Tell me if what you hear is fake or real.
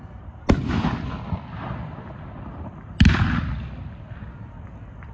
real